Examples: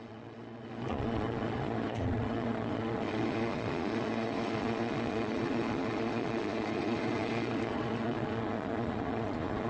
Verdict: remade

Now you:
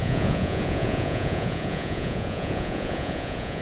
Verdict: remade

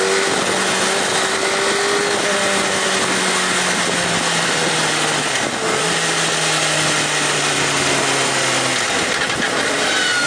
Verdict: recorded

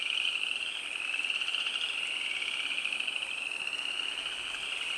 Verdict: recorded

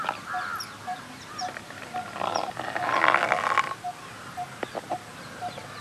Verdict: recorded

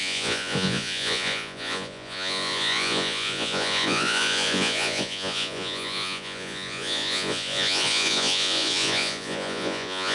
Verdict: remade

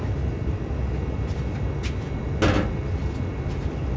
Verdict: recorded